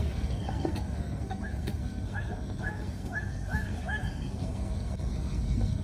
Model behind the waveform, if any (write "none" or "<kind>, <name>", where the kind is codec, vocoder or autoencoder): codec, SNAC